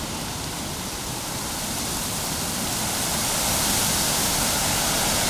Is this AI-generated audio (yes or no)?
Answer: no